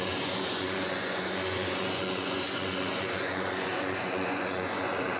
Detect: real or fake fake